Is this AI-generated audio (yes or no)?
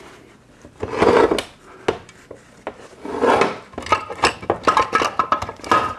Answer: no